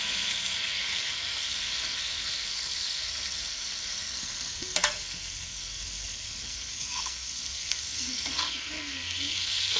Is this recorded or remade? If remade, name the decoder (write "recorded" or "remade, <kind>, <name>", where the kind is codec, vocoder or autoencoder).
remade, codec, SNAC